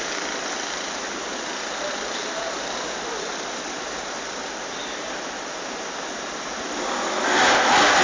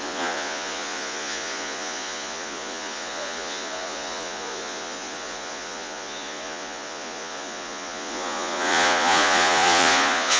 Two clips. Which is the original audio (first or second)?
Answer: first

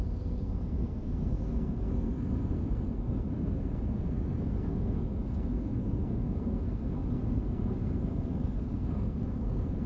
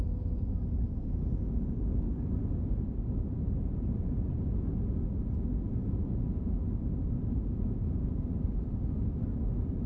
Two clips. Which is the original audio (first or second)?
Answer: second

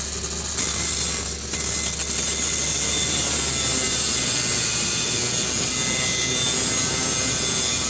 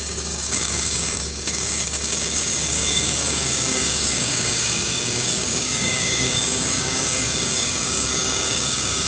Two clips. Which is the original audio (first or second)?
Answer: first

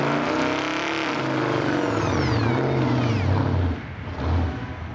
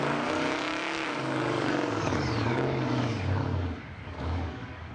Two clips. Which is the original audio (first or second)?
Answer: first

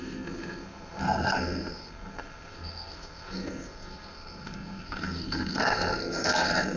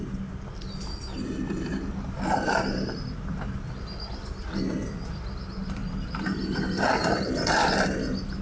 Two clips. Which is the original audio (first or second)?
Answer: second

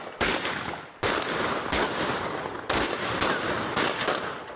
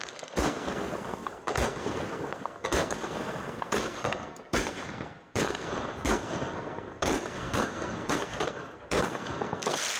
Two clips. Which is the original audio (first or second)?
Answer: first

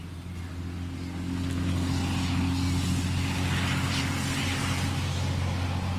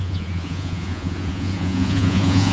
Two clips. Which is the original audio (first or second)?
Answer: first